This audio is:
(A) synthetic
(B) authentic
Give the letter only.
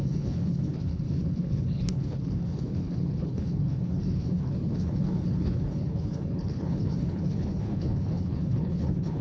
A